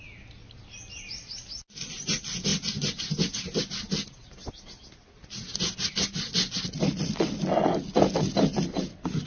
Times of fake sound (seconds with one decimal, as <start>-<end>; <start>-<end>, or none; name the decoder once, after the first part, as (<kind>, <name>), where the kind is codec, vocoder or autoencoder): none